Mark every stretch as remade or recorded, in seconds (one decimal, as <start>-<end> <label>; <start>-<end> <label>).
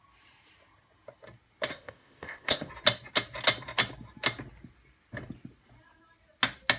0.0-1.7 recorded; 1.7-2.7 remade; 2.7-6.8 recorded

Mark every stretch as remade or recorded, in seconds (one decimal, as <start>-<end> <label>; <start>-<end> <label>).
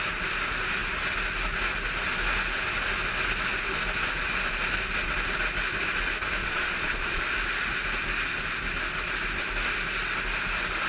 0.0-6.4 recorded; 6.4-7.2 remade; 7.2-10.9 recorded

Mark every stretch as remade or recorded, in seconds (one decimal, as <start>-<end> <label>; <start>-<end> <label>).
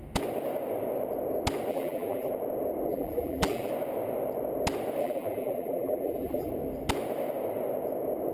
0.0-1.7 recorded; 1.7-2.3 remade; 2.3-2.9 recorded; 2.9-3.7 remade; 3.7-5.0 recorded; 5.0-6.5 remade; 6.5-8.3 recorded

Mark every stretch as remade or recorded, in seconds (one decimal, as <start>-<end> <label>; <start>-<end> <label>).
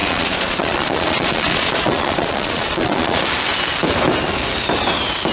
0.0-3.2 remade; 3.2-5.3 recorded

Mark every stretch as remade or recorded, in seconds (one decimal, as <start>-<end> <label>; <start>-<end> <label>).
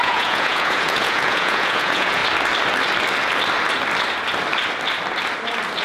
0.0-2.2 remade; 2.2-5.8 recorded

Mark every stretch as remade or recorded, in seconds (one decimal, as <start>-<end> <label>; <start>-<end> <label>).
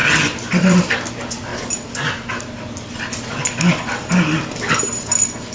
0.0-5.5 recorded